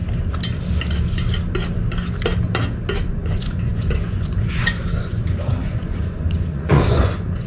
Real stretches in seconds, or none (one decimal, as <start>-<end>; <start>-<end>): 0.0-3.1